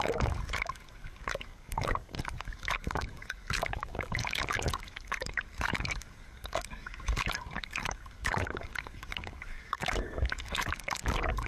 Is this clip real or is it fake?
fake